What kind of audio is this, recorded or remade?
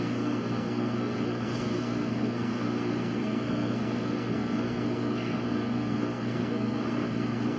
remade